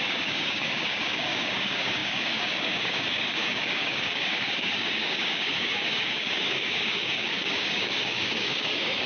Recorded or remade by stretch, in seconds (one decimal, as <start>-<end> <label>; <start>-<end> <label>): 0.0-9.1 remade